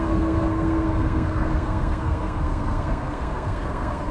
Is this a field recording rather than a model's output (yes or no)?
no